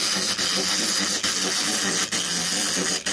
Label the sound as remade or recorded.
recorded